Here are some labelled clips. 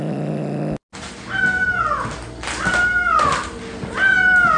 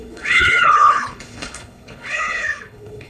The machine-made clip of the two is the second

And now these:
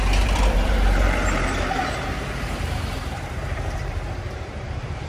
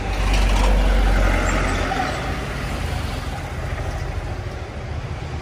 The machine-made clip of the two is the first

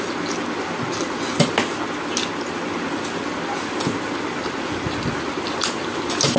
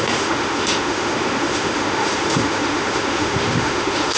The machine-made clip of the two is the second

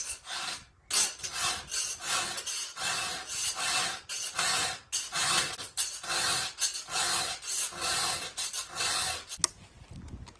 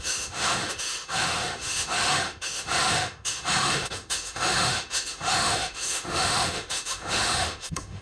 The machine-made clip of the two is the second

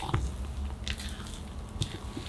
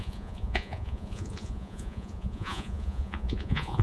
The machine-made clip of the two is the second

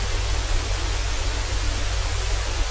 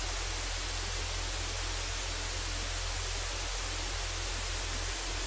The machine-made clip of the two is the first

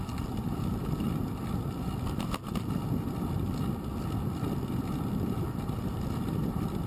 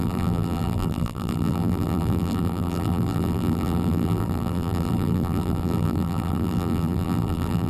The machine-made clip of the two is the second